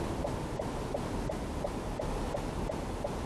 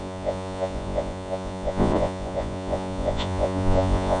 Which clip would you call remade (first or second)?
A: second